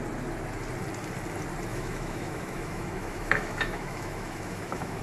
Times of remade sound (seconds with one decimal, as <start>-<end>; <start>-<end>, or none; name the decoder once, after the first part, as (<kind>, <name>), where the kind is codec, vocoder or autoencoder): 1.7-5.0 (autoencoder, DAC-VAE)